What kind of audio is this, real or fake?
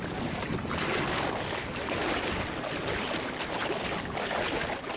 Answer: real